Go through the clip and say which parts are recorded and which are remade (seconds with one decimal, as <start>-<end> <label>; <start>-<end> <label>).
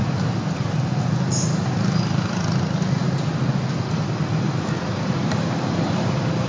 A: 0.0-6.5 recorded